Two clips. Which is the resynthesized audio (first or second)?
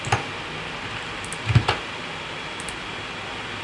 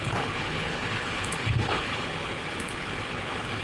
second